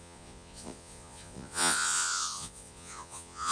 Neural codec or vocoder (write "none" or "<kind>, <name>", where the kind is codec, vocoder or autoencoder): vocoder, Vocos